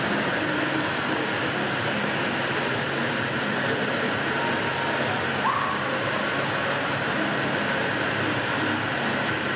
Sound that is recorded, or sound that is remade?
recorded